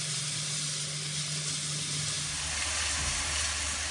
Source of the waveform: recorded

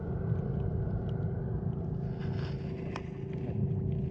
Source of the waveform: recorded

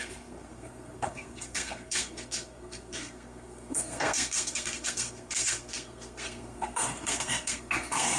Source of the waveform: remade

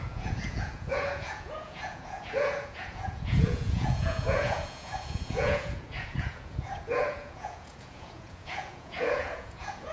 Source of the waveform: remade